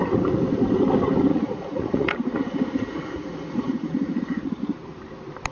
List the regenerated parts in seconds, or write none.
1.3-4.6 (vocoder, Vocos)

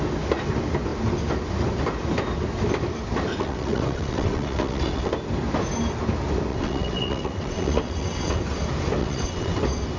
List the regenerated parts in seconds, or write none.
3.3-5.1 (vocoder, WaveNeXt); 6.5-8.4; 9.0-9.6

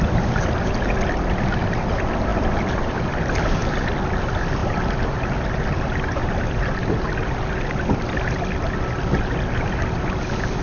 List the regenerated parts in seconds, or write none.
none

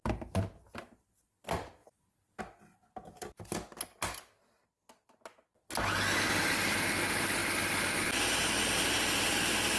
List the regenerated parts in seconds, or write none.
none

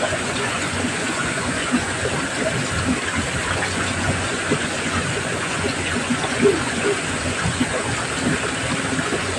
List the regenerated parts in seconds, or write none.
0.0-2.0 (vocoder, Vocos); 3.4-7.9; 9.0-9.4